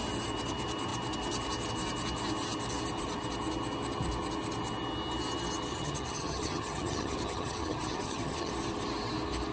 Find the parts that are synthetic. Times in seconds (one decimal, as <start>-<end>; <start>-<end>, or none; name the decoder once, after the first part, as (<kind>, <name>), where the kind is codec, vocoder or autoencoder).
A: 5.7-8.5 (vocoder, HiFi-GAN)